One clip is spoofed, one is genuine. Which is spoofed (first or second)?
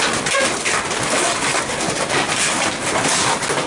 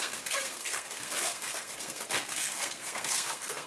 second